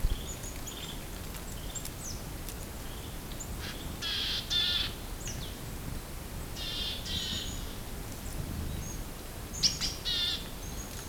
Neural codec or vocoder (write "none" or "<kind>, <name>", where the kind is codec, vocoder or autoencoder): none